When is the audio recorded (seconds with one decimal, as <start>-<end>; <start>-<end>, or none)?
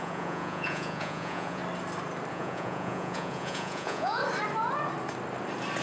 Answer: 1.6-2.3; 4.2-5.8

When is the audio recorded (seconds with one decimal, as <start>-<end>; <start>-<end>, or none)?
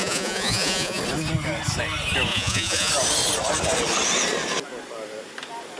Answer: 1.0-2.3; 2.9-5.8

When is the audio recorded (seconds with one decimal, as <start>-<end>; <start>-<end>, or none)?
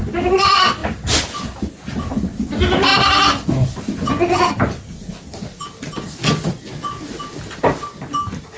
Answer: 0.0-8.6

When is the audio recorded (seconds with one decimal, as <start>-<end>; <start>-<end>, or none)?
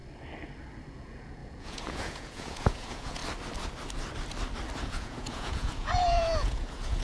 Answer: 0.0-0.9; 3.2-4.8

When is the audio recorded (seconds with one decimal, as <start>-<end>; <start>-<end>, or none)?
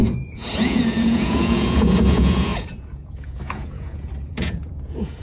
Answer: none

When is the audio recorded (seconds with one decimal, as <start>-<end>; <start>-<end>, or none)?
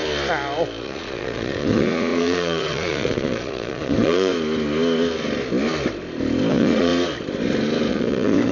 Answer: 0.0-0.8; 4.3-6.5; 6.9-7.9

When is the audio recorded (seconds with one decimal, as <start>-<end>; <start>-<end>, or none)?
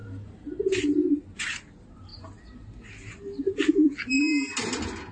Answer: 0.0-5.1